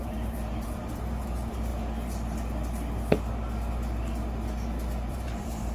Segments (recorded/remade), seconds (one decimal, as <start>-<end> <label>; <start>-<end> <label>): 0.0-1.7 remade; 1.7-5.1 recorded; 5.1-5.7 remade